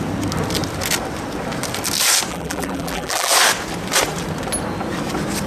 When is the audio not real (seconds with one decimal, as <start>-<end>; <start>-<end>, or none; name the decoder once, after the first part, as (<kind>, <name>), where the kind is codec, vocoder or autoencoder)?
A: 2.3-3.3 (vocoder, BigVGAN v2)